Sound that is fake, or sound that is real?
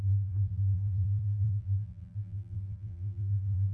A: fake